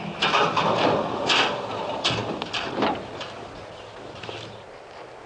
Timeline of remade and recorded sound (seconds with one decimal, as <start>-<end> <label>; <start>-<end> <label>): 0.0-5.3 recorded